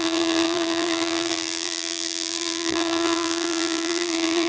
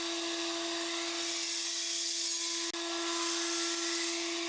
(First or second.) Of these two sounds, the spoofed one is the first